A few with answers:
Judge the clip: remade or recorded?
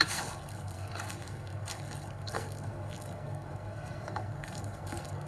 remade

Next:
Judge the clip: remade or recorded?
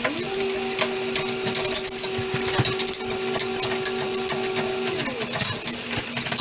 recorded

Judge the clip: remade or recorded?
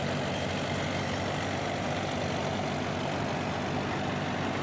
recorded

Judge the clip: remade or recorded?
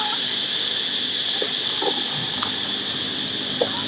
recorded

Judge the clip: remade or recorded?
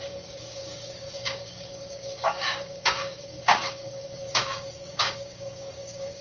remade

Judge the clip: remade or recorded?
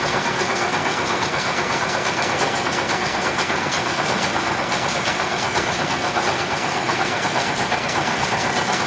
remade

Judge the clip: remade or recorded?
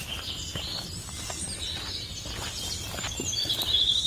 recorded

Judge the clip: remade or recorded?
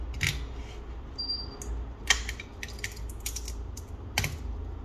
recorded